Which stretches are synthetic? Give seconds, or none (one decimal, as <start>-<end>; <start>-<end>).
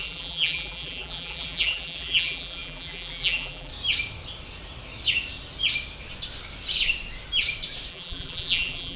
0.0-3.7; 7.9-9.0